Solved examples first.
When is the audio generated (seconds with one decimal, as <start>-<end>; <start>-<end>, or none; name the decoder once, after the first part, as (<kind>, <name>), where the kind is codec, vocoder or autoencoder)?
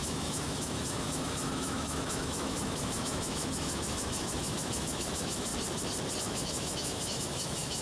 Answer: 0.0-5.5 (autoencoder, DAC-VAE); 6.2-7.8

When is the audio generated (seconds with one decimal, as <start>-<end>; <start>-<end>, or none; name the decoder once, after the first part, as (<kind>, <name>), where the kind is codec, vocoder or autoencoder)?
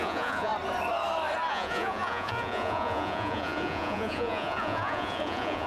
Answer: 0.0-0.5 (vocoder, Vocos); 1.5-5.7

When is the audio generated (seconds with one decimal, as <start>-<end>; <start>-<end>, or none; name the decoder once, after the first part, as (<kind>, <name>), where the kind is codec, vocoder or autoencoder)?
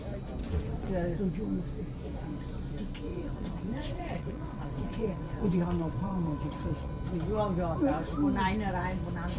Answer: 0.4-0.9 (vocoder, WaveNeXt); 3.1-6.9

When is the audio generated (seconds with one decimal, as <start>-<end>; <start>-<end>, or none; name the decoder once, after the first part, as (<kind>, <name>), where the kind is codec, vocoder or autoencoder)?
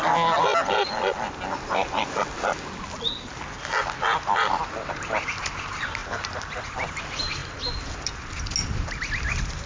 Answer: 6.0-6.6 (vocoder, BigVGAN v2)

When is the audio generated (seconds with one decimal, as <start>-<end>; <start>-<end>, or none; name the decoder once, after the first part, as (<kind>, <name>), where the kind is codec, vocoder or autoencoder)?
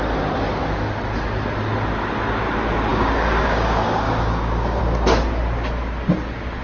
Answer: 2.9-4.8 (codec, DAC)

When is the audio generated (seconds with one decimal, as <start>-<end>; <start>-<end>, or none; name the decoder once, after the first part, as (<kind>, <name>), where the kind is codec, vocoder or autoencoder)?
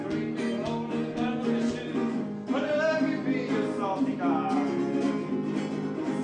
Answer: none